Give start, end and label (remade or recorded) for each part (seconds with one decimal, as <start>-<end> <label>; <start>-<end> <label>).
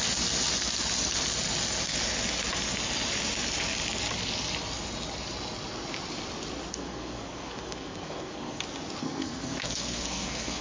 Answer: 0.0-6.7 recorded; 6.7-8.6 remade; 8.6-9.0 recorded; 9.0-10.6 remade